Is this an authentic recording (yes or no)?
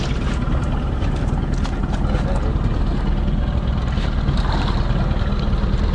yes